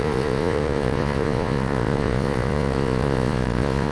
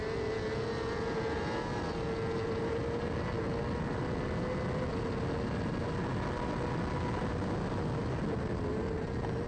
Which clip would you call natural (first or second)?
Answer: second